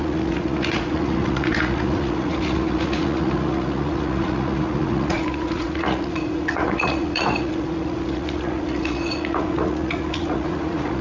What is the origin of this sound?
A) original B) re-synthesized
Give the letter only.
B